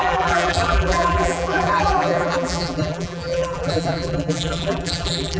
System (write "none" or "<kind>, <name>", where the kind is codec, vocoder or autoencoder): vocoder, BigVGAN v2